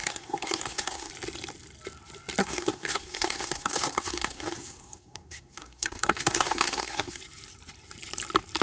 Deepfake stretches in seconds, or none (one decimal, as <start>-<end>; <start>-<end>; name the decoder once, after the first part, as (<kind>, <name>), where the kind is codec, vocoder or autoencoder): 0.0-1.1 (codec, SNAC); 2.4-7.2